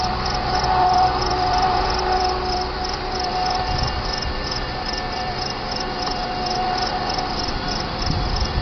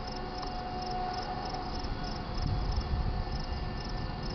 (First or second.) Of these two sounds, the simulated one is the first